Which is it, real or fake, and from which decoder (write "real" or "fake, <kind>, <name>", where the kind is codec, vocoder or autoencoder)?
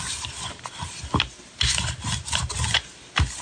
real